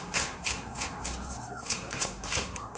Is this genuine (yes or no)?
no